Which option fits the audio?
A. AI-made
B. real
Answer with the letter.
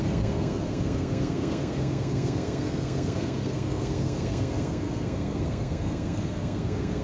A